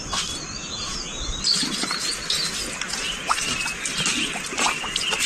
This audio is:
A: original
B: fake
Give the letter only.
A